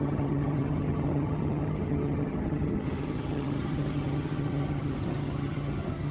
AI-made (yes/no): yes